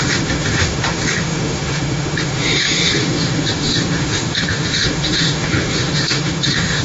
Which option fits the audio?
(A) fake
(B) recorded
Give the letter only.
A